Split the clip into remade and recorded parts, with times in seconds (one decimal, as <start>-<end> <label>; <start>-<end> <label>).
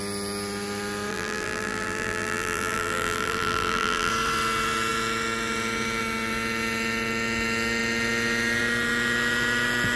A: 0.0-1.1 recorded; 1.1-4.1 remade; 4.1-10.0 recorded